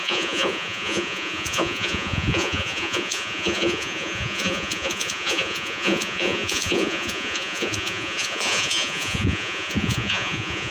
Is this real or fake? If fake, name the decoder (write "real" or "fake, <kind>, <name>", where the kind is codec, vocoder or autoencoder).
fake, vocoder, Vocos